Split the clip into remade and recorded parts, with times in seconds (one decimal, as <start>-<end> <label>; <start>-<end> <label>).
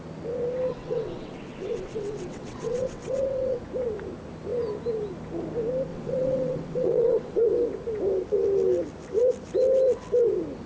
0.0-0.7 recorded; 0.7-3.6 remade; 3.6-5.9 recorded; 5.9-7.4 remade; 7.4-10.7 recorded